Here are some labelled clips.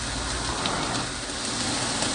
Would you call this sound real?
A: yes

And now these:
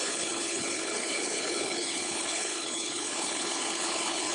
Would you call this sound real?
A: no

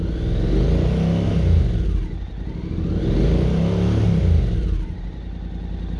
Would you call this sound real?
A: yes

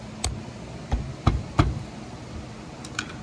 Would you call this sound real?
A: yes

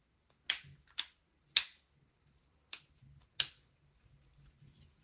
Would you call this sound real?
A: yes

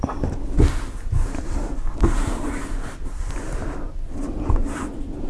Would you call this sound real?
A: yes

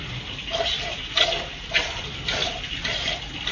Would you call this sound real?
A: yes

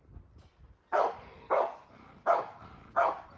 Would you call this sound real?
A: yes